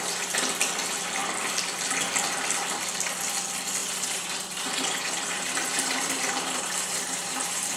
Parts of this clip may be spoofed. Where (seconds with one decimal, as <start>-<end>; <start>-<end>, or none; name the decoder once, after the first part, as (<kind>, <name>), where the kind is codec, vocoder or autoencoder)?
3.8-7.8 (vocoder, BigVGAN v2)